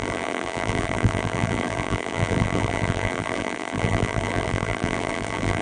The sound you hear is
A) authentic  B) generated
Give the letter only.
B